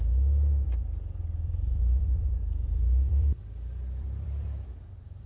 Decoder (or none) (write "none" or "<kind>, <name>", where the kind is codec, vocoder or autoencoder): vocoder, BigVGAN v2